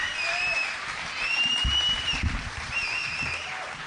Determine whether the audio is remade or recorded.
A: remade